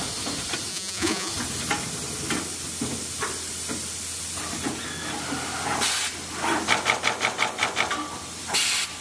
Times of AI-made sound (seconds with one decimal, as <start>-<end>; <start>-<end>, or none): 0.7-1.3